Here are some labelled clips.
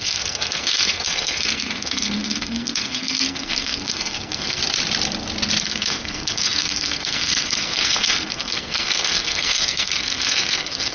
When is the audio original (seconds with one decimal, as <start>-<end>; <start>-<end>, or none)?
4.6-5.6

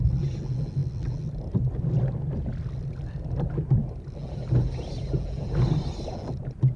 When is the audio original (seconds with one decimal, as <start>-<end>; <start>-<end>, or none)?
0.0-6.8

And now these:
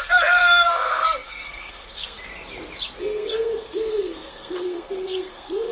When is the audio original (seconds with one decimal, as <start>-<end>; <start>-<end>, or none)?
2.3-3.0